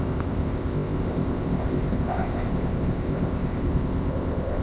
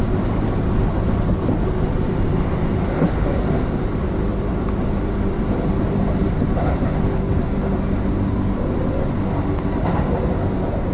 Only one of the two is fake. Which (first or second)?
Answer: first